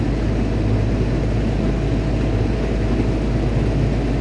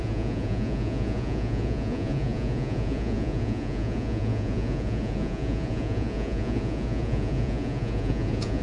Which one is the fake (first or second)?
second